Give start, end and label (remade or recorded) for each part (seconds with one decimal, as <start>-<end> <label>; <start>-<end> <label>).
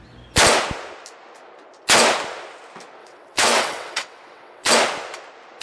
0.0-3.0 recorded; 3.0-4.7 remade; 4.7-5.6 recorded